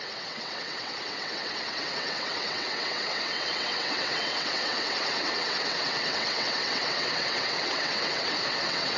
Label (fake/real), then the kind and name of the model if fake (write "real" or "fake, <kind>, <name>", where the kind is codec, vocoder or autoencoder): fake, vocoder, WaveNeXt